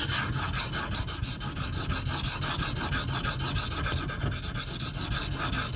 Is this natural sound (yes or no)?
yes